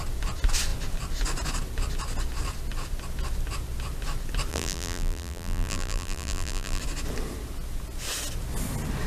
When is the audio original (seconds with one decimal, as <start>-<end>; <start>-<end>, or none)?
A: 0.0-4.5; 6.8-9.1